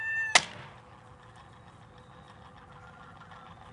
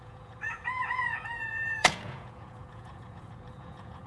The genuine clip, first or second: first